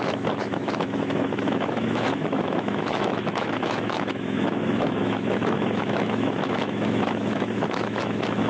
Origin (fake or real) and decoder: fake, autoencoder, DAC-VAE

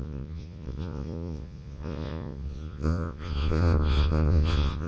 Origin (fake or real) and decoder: fake, vocoder, Vocos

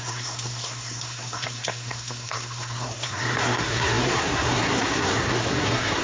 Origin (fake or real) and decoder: fake, codec, SNAC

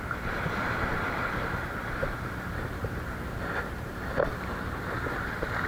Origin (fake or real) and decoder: fake, vocoder, BigVGAN v2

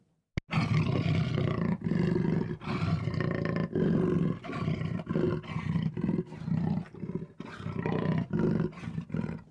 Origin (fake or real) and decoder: real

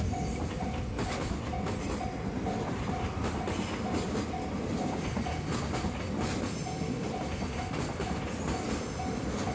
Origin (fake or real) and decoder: real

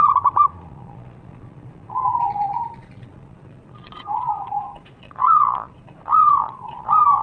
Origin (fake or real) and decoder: fake, vocoder, Vocos